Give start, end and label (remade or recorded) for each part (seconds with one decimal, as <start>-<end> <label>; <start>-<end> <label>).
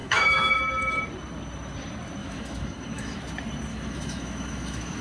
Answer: 0.0-0.6 remade; 0.6-2.2 recorded; 2.2-3.2 remade; 3.2-3.7 recorded; 3.7-5.0 remade